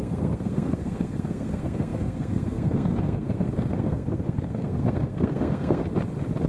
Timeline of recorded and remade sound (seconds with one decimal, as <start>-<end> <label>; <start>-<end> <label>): 0.0-5.8 remade; 5.8-6.5 recorded